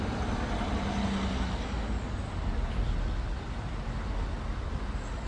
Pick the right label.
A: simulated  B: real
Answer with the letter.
B